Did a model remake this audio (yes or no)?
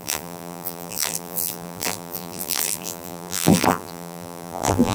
yes